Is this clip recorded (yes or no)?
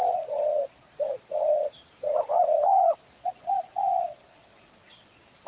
no